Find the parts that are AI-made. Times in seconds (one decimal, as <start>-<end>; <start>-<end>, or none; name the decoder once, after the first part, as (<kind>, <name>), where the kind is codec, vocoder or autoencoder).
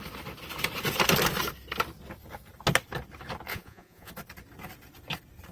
3.5-4.1 (vocoder, Vocos)